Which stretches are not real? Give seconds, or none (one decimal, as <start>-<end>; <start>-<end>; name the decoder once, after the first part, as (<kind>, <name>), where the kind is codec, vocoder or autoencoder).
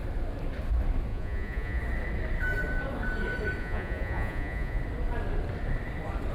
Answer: 1.1-1.8 (vocoder, Vocos); 3.6-4.8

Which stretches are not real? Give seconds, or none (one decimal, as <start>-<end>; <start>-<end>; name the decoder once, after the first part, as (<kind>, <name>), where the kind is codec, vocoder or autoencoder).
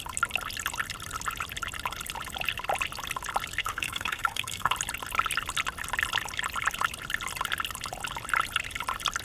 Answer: 3.6-4.7 (codec, SNAC)